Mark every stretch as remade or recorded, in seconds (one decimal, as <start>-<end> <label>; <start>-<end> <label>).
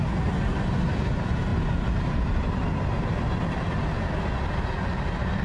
0.0-5.4 recorded